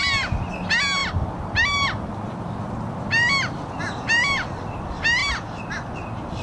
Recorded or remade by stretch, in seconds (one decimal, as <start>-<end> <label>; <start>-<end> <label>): 0.0-6.4 recorded